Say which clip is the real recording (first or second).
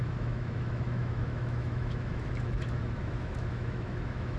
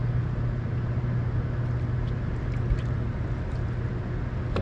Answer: second